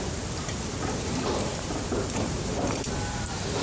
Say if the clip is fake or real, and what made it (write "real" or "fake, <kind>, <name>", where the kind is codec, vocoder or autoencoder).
fake, vocoder, BigVGAN v2